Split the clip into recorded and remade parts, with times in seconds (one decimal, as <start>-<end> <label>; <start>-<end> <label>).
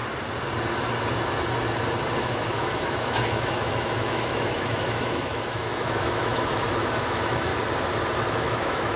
0.0-2.2 recorded; 2.2-7.5 remade; 7.5-8.3 recorded; 8.3-9.0 remade